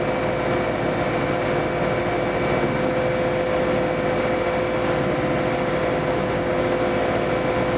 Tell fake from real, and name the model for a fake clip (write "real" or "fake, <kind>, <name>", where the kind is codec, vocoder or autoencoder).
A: real